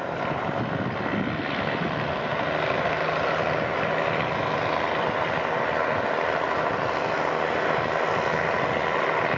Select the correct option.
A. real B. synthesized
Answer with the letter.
A